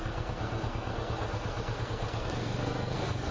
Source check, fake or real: fake